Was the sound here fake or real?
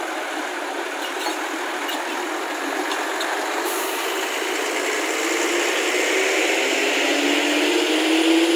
real